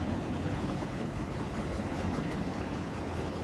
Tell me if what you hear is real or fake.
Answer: fake